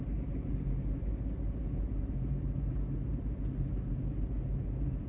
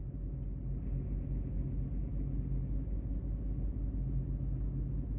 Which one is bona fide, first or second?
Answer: second